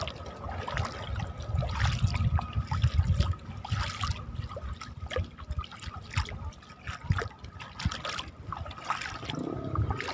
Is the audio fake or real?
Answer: real